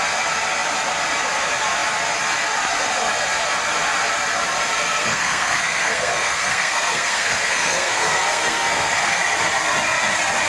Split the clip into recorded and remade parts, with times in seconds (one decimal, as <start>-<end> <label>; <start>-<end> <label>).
0.0-5.0 recorded; 5.0-9.2 remade; 9.2-10.5 recorded